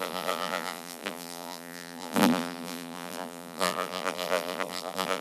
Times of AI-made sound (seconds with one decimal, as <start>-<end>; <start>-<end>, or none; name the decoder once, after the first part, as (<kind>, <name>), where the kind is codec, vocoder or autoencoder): 0.0-5.2 (vocoder, BigVGAN v2)